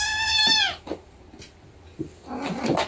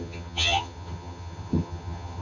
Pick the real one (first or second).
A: first